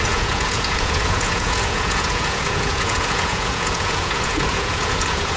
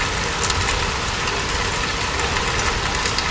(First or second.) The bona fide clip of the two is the second